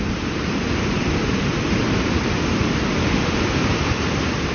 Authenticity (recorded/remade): recorded